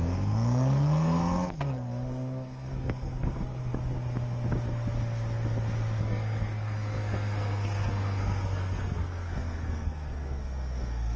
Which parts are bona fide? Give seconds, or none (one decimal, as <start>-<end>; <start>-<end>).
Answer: 3.7-6.0